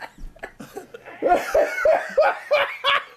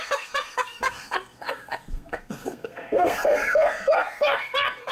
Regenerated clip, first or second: second